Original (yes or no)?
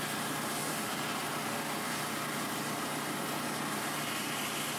yes